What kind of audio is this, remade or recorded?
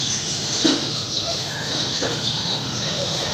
remade